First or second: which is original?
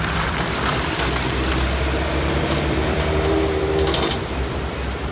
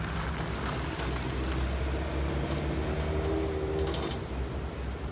second